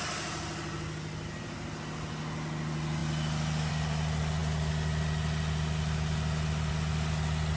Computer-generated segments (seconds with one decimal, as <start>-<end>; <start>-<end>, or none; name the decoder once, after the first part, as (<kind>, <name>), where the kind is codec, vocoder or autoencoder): none